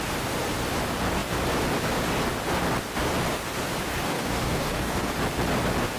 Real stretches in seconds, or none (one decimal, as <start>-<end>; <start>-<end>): 0.0-3.9; 5.1-6.0